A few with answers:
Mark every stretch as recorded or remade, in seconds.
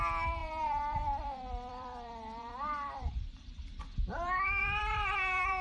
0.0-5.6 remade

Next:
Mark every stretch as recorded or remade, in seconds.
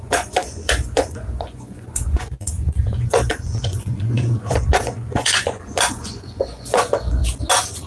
0.0-7.2 remade; 7.2-7.9 recorded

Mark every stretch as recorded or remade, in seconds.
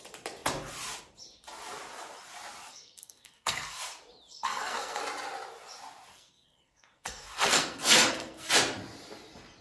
0.0-2.7 recorded; 2.7-3.8 remade; 3.8-4.3 recorded; 4.3-5.0 remade; 5.0-6.1 recorded; 6.1-8.5 remade; 8.5-9.6 recorded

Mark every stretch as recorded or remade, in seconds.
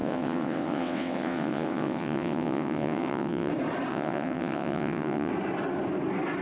0.0-3.5 remade; 3.5-3.9 recorded; 3.9-5.3 remade; 5.3-6.4 recorded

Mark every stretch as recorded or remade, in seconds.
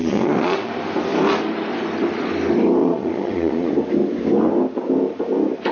0.0-0.7 remade; 0.7-2.8 recorded; 2.8-3.7 remade; 3.7-5.7 recorded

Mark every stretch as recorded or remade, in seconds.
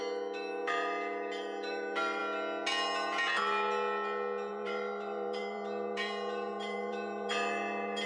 0.0-2.2 remade; 2.2-4.5 recorded; 4.5-8.1 remade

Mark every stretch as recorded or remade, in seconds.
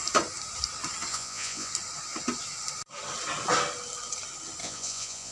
0.0-1.1 recorded; 1.1-1.7 remade; 1.7-4.6 recorded; 4.6-5.3 remade